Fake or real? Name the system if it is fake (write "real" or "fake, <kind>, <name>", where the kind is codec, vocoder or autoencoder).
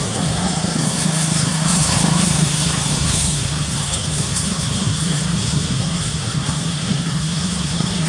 fake, codec, SNAC